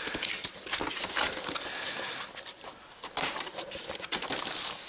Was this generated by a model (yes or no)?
no